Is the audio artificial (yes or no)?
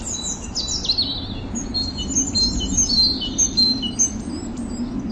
no